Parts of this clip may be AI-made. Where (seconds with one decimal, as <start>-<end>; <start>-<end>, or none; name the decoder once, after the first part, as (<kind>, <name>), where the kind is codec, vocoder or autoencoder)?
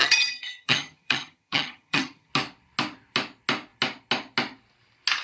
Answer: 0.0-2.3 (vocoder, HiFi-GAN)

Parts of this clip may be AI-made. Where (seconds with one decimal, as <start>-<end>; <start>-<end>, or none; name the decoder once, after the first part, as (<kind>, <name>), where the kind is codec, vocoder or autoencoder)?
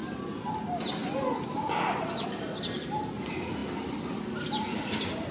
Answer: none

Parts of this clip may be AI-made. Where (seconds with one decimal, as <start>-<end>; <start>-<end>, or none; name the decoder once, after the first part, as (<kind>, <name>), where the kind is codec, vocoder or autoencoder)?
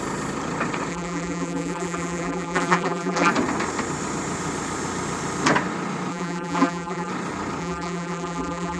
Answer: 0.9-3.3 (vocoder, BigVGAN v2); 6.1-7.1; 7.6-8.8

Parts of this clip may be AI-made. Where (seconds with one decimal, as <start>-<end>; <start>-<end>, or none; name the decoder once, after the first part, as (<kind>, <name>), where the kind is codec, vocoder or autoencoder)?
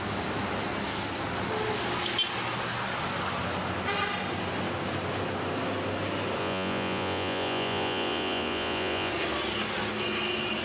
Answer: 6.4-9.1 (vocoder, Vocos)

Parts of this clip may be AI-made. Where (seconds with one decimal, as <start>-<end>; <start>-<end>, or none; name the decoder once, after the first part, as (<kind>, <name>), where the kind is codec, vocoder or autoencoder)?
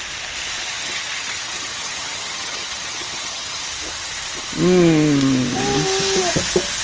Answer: 0.6-3.7 (vocoder, HiFi-GAN)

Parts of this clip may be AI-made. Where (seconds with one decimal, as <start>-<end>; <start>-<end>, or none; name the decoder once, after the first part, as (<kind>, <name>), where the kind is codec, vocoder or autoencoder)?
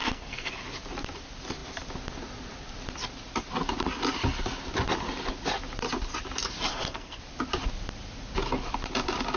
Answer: 0.0-0.5 (codec, SNAC); 6.7-7.2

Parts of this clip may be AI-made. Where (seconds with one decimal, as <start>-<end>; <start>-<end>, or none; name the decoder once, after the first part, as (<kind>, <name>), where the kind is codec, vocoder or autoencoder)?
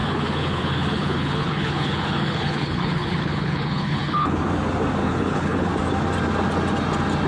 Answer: 0.0-4.4 (codec, HILCodec); 5.0-5.7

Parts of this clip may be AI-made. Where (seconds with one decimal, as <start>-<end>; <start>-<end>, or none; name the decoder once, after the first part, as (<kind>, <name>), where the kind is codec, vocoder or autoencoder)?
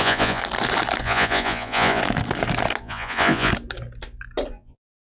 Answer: 0.0-0.4 (vocoder, Vocos); 1.0-2.0; 2.8-3.5; 4.5-5.0